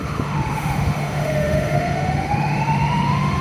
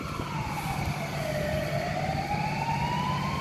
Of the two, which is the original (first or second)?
second